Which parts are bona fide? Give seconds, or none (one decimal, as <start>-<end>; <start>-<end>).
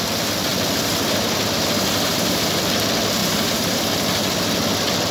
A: 0.0-2.1; 2.6-3.2; 3.8-5.1